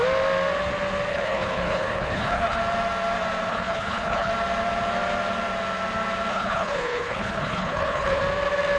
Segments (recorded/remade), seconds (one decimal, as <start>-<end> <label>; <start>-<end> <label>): 0.0-1.1 recorded; 1.1-2.6 remade; 2.6-3.5 recorded; 3.5-4.3 remade; 4.3-6.3 recorded; 6.3-8.2 remade; 8.2-8.8 recorded